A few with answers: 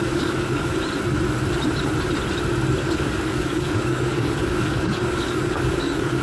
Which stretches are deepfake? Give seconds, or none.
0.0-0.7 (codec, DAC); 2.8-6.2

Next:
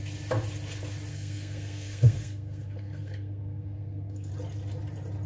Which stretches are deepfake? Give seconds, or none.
1.1-4.3 (codec, SNAC)

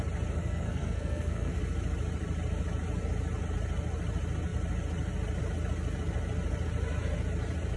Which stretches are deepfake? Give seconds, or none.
0.4-1.6 (codec, SNAC)

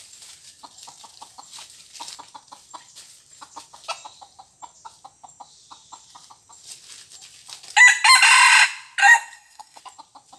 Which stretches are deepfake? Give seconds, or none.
9.0-9.8 (codec, SNAC)

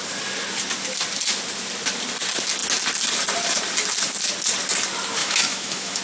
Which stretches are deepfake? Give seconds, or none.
5.2-6.0 (autoencoder, DAC-VAE)

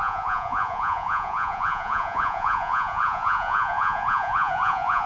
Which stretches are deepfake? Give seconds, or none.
0.0-5.1 (vocoder, Vocos)

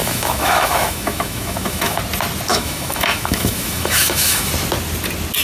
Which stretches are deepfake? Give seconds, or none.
0.0-2.0 (autoencoder, DAC-VAE); 2.5-4.5